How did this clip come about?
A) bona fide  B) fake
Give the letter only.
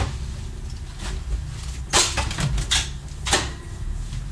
A